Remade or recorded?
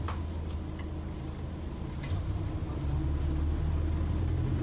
recorded